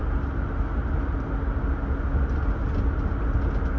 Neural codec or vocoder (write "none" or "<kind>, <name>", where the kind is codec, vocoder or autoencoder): none